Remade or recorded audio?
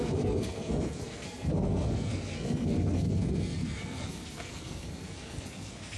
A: remade